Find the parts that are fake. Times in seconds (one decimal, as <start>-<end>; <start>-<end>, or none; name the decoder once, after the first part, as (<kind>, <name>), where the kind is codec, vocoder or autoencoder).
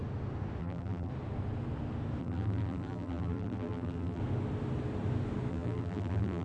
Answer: 0.6-1.1 (vocoder, BigVGAN v2); 2.2-4.2; 5.5-6.4